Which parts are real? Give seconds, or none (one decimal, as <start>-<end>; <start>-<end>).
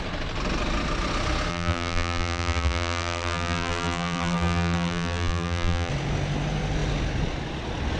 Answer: 0.0-1.5; 5.9-8.0